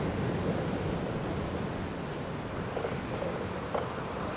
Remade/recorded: recorded